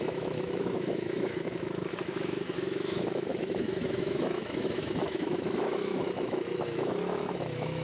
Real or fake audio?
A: fake